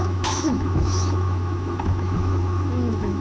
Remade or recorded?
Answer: remade